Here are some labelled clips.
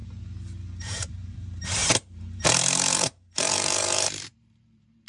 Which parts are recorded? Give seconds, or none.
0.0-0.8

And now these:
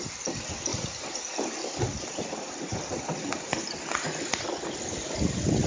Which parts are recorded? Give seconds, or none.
0.0-5.7

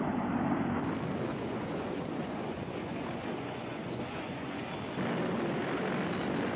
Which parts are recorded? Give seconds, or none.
0.0-1.3; 4.7-6.6